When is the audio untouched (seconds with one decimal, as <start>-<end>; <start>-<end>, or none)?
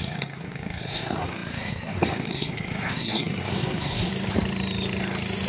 4.1-5.5